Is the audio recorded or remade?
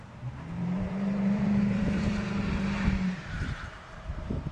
remade